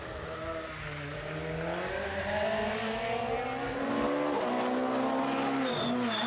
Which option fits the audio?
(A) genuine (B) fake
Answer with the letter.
A